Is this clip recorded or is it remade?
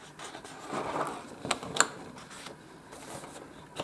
recorded